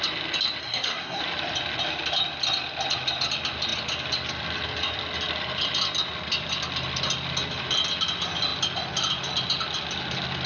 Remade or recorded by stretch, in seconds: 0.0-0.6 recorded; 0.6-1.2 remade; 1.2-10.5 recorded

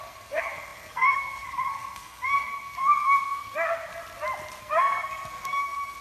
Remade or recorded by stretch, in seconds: 0.0-3.9 remade; 3.9-4.6 recorded; 4.6-6.0 remade